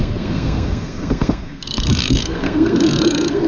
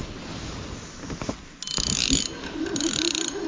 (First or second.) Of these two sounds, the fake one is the first